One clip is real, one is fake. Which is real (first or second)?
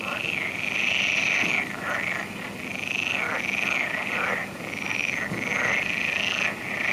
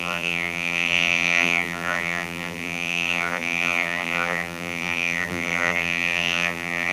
first